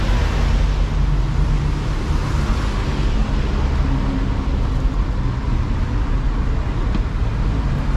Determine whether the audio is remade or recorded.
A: recorded